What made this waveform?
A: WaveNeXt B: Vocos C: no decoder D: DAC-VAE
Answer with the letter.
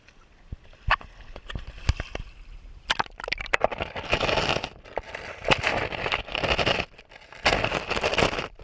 C